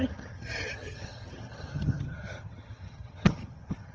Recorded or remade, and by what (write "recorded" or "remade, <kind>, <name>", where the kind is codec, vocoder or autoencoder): remade, vocoder, HiFi-GAN